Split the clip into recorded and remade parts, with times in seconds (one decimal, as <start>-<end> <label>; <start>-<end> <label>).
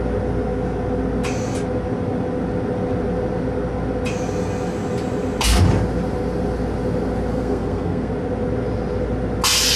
0.0-7.3 recorded; 7.3-8.1 remade; 8.1-9.8 recorded